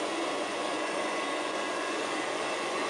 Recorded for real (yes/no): no